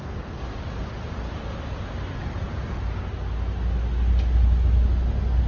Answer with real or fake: real